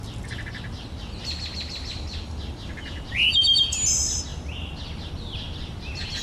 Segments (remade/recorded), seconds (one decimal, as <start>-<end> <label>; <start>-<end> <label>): 0.0-6.2 recorded